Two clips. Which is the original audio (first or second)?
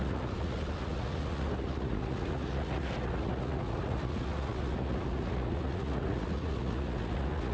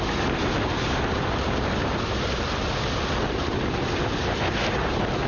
second